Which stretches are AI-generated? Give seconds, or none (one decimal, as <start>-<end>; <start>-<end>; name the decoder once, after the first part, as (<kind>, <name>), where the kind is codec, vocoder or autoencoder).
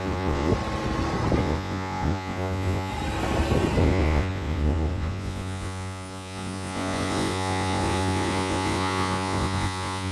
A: 0.0-0.5 (vocoder, Vocos); 1.4-2.9; 3.8-10.1